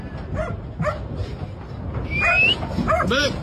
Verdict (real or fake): real